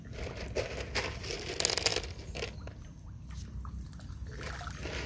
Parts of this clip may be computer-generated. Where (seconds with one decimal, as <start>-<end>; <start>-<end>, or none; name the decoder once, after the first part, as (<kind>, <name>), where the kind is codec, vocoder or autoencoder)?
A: none